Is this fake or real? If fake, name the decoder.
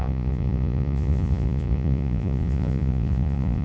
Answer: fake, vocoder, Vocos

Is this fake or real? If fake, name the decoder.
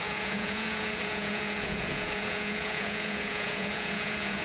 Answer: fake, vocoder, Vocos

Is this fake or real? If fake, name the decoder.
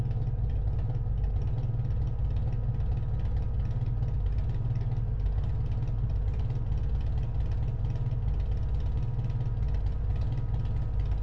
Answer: real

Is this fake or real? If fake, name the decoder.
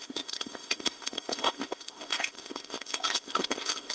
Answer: fake, codec, ZipCodec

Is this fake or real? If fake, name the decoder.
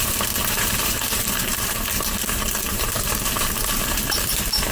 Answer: fake, vocoder, BigVGAN v2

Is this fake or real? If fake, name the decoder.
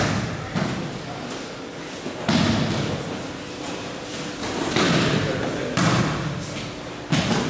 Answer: real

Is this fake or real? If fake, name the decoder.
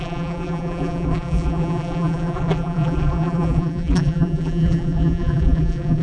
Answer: fake, vocoder, BigVGAN v2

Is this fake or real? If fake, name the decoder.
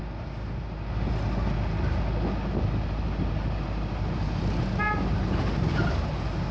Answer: real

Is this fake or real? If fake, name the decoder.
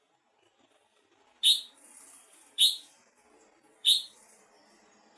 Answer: real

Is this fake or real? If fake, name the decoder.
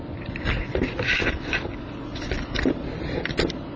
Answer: real